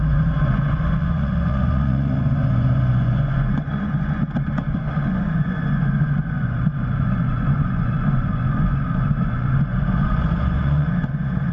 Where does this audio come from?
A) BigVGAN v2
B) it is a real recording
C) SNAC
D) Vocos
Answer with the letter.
D